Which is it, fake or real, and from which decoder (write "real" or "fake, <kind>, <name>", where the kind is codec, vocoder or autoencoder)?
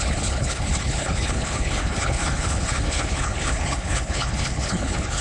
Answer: fake, codec, HILCodec